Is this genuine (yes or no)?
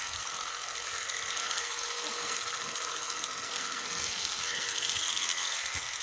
no